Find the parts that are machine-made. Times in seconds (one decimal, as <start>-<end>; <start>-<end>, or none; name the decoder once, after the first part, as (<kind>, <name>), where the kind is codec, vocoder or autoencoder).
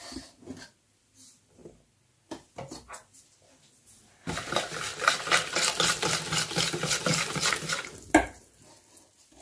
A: none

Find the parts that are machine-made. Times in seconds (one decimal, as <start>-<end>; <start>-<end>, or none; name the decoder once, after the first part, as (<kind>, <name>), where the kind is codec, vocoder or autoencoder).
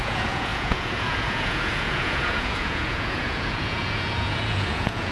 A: 0.0-5.1 (vocoder, Vocos)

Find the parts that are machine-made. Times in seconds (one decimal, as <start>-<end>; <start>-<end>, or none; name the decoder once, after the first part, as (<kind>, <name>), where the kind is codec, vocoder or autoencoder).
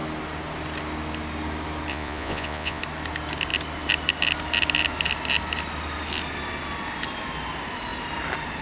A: 1.9-2.8 (vocoder, Vocos)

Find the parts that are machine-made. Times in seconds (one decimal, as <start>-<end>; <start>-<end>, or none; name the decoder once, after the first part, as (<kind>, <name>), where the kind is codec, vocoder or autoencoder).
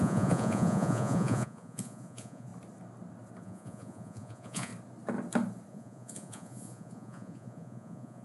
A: 0.0-2.5 (vocoder, Vocos); 3.4-4.7; 5.7-8.2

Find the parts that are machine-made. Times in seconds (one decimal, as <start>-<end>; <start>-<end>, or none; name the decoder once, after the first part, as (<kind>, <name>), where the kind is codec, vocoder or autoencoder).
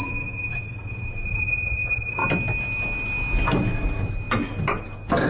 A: 0.0-2.2 (vocoder, Vocos)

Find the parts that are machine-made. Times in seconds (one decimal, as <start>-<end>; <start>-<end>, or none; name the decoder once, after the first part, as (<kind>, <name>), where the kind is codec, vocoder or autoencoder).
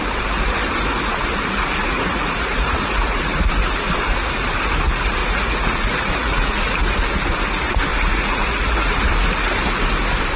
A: 1.8-3.2 (vocoder, Vocos); 5.2-6.7; 7.9-9.0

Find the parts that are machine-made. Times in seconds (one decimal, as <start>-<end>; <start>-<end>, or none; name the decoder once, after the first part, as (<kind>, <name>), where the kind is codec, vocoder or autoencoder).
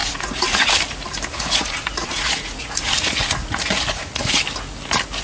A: 0.0-0.7 (vocoder, Vocos); 1.3-4.4